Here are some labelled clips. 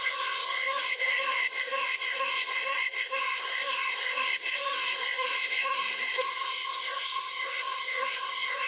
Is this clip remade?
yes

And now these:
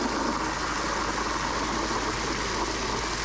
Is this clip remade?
no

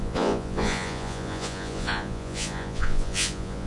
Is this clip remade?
yes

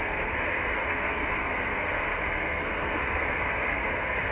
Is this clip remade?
yes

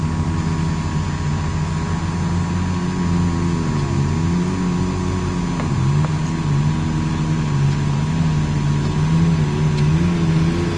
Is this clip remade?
no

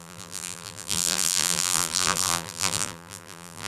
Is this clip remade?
yes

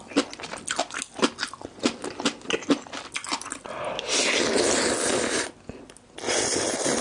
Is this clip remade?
no